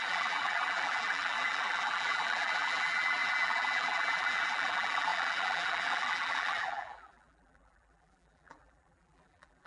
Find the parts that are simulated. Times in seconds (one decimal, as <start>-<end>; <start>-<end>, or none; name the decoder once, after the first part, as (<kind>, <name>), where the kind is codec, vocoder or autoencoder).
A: 0.0-9.7 (vocoder, BigVGAN v2)

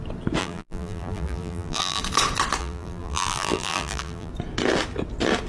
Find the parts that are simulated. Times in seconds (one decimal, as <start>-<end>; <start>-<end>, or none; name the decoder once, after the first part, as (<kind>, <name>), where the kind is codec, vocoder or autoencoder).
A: 0.4-2.0 (vocoder, BigVGAN v2); 2.6-4.3

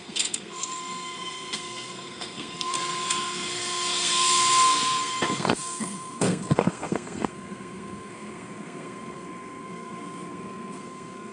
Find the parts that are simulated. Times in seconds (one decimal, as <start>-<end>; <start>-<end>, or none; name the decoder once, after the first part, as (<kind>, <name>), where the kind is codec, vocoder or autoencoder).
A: 0.0-11.3 (codec, SNAC)

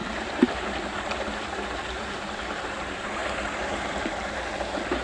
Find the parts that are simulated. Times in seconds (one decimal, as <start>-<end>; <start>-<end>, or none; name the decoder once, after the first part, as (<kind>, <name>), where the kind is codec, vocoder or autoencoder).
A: 0.0-3.2 (vocoder, BigVGAN v2); 3.7-5.0

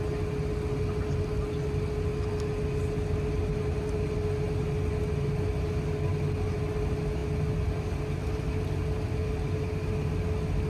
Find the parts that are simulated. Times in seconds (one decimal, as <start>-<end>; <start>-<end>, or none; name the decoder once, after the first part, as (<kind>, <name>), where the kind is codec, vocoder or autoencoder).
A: none